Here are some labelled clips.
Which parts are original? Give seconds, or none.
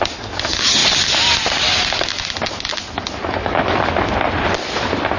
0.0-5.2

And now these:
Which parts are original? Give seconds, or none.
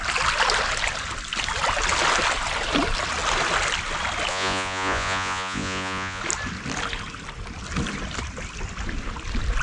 0.0-4.3; 6.2-9.6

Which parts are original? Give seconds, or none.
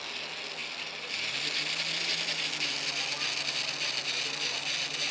0.0-5.1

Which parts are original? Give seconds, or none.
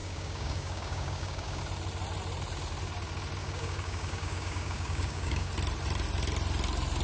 1.6-3.4; 5.5-7.0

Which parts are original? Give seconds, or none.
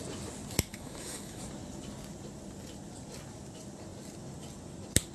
0.0-0.7; 1.4-5.1